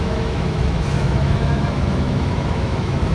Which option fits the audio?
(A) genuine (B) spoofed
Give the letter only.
B